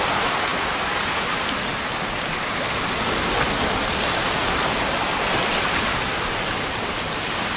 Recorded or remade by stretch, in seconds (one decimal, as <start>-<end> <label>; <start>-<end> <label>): 0.0-7.6 recorded